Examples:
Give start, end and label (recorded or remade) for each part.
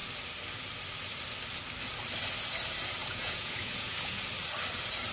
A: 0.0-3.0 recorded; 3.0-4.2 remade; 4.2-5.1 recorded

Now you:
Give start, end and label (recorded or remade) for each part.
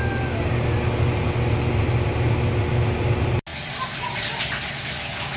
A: 0.0-3.5 recorded; 3.5-4.4 remade; 4.4-5.4 recorded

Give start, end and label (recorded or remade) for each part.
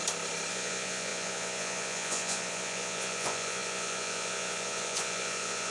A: 0.0-0.5 recorded; 0.5-5.7 remade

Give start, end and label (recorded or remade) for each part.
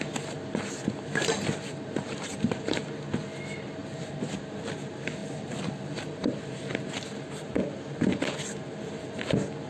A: 0.0-1.6 recorded; 1.6-2.8 remade; 2.8-3.8 recorded; 3.8-4.4 remade; 4.4-5.2 recorded; 5.2-8.2 remade; 8.2-9.7 recorded